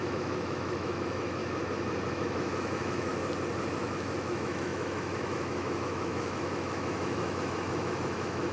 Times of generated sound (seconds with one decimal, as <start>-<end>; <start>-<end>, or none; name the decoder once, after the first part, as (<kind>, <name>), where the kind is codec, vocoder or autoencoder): 0.0-1.4 (autoencoder, DAC-VAE); 2.1-3.1; 3.8-8.5